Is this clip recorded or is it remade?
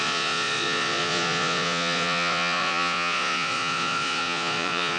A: remade